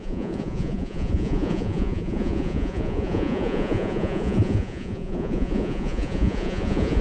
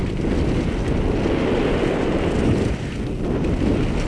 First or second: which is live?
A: second